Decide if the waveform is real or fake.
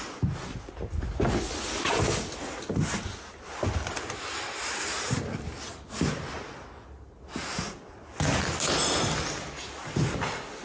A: real